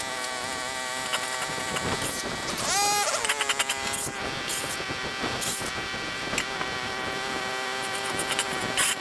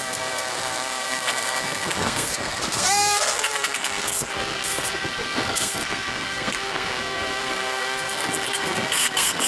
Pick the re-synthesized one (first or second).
second